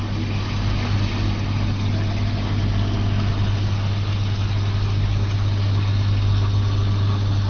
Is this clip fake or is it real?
real